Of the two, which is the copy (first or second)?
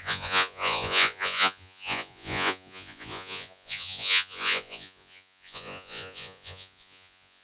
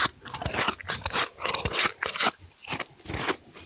first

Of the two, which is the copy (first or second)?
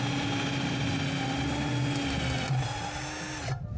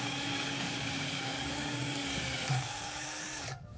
second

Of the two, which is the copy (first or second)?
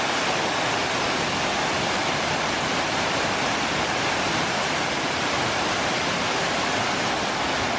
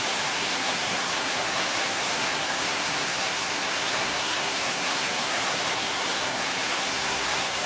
second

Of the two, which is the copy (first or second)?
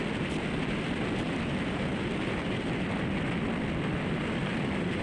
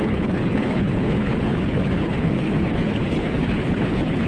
second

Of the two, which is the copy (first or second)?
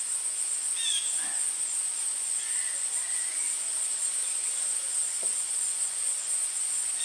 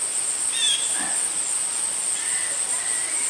first